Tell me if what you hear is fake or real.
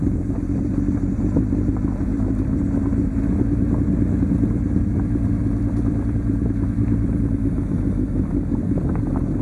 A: real